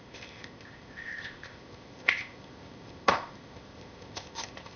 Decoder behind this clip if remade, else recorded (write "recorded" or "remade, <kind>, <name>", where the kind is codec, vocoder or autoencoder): remade, codec, ZipCodec